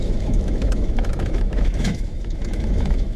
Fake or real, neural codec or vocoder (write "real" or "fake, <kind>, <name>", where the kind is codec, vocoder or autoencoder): fake, autoencoder, DAC-VAE